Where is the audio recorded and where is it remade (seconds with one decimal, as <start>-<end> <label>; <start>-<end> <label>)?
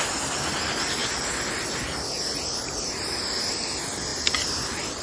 0.0-5.0 recorded